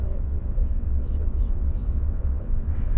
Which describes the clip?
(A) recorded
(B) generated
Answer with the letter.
B